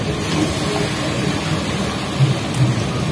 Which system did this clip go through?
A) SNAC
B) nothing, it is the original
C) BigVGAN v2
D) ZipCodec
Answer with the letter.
B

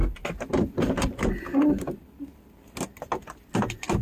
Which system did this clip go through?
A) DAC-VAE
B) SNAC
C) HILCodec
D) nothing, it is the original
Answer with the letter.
D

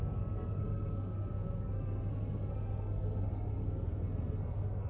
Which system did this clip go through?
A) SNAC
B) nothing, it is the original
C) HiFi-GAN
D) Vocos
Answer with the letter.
A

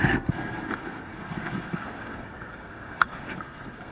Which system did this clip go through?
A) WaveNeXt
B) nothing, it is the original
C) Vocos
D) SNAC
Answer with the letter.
D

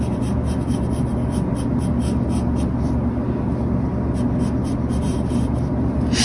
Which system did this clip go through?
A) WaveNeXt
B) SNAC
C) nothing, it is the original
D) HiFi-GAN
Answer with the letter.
C